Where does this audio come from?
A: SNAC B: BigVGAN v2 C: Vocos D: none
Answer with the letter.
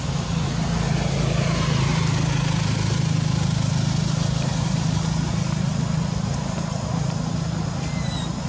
D